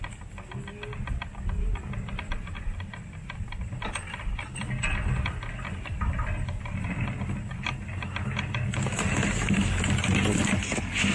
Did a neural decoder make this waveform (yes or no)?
no